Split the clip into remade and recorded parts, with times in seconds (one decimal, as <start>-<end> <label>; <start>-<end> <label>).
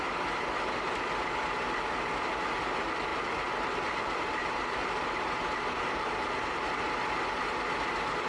0.0-3.1 recorded; 3.1-6.8 remade; 6.8-8.3 recorded